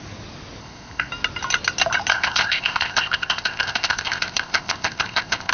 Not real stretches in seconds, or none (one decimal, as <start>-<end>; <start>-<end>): 0.6-1.1; 2.1-5.5